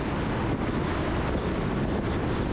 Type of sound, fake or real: real